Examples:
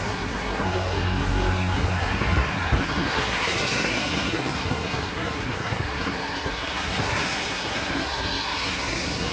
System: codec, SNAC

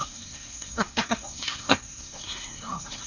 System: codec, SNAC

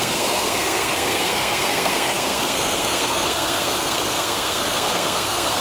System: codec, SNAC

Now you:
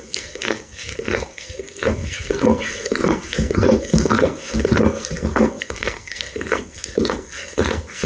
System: codec, SNAC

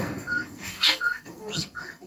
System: codec, SNAC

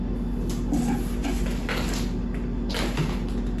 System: none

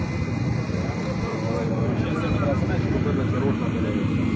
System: none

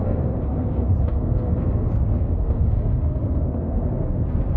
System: codec, SNAC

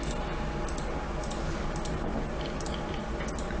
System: none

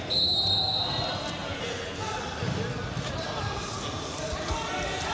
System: none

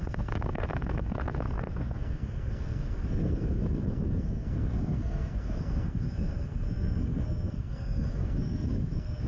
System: codec, SNAC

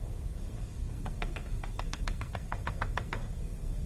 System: codec, SNAC